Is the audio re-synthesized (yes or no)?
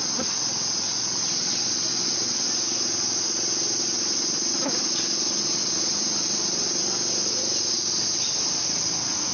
no